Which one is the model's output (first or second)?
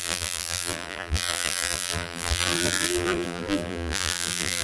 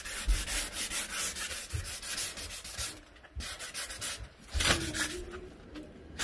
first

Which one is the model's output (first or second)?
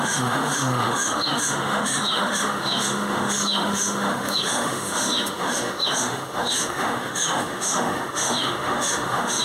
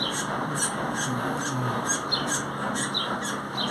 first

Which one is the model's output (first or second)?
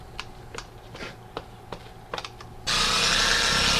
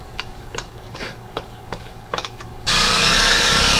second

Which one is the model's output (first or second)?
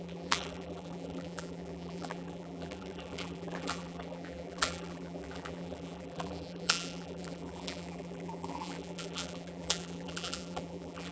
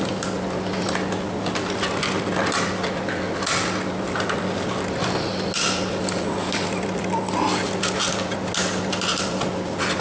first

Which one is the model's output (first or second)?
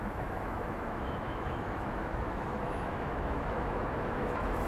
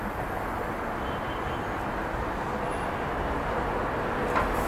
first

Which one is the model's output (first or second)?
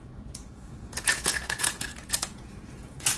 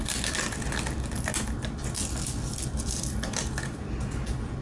first